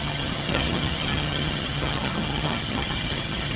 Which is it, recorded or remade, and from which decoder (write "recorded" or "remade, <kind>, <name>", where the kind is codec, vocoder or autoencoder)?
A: remade, vocoder, HiFi-GAN